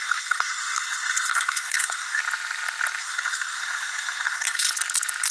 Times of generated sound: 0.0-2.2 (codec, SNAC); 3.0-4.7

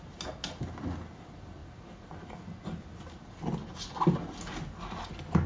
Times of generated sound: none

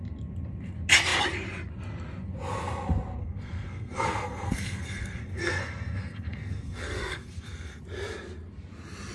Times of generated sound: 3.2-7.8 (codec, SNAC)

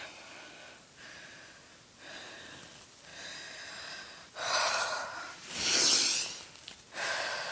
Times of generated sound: 3.1-5.5 (vocoder, BigVGAN v2)